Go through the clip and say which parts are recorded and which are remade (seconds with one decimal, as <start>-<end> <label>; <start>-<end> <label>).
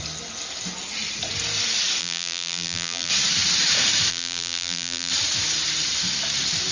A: 0.0-2.0 recorded; 2.0-3.1 remade; 3.1-4.1 recorded; 4.1-5.1 remade; 5.1-6.7 recorded